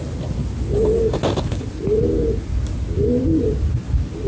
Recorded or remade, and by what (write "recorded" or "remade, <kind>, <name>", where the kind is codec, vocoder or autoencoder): recorded